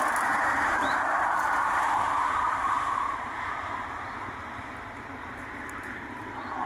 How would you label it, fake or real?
fake